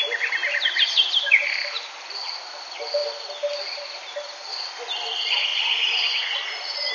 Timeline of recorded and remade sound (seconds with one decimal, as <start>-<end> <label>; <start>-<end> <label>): 0.0-5.5 recorded; 5.5-6.9 remade